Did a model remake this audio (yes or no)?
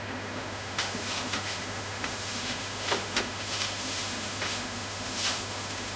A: yes